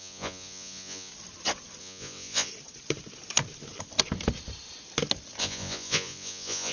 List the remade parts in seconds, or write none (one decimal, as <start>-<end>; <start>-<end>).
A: 0.0-1.1; 1.8-2.5; 5.4-6.7